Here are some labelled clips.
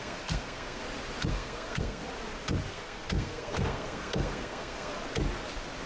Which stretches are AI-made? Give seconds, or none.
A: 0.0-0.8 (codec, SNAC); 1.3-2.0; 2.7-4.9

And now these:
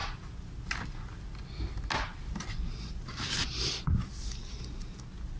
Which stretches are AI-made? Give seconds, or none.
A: none

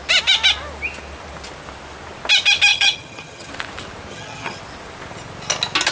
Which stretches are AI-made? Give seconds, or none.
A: 2.7-3.5 (vocoder, HiFi-GAN); 4.1-4.6

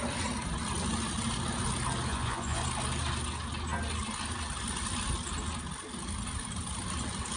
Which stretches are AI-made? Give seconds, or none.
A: 2.1-2.6 (vocoder, Vocos)

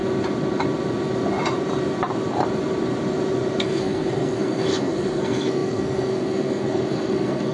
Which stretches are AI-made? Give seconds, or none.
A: 3.6-7.5 (codec, SNAC)

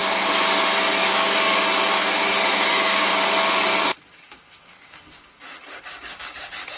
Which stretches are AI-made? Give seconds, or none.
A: 1.0-1.6 (codec, DAC); 2.5-3.1; 3.7-6.8

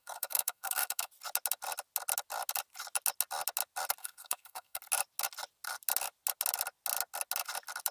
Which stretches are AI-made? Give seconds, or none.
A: 0.0-1.1 (codec, SNAC); 4.0-4.8